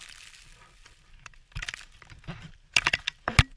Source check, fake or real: real